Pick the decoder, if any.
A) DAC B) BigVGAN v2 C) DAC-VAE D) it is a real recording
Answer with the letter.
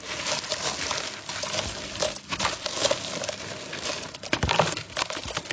D